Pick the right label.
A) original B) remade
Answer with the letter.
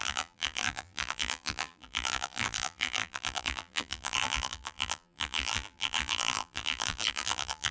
B